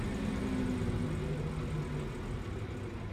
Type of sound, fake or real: real